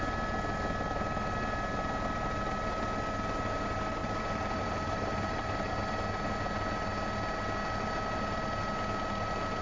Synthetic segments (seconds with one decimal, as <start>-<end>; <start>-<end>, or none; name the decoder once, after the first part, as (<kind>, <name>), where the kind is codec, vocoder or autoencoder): 4.0-5.7 (vocoder, BigVGAN v2)